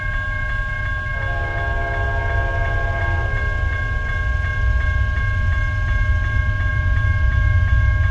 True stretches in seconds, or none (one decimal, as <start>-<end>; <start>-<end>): 0.0-8.1